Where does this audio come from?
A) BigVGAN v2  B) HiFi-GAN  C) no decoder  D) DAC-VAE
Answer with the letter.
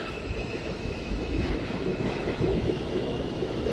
D